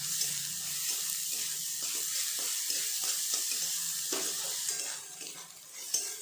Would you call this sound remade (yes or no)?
yes